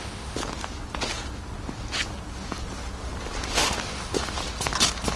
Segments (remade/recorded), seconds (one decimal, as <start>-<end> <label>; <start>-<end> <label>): 0.0-0.4 remade; 0.4-3.5 recorded; 3.5-4.4 remade; 4.4-5.2 recorded